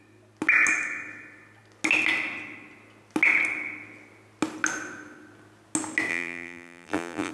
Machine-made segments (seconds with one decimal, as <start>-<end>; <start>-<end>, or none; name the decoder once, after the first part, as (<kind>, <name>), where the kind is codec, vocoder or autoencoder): 6.1-7.3 (vocoder, BigVGAN v2)